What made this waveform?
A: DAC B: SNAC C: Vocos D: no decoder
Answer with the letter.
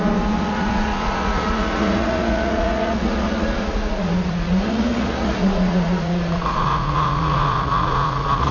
C